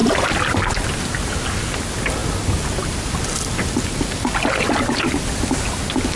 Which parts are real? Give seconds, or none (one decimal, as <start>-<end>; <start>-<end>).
0.0-6.2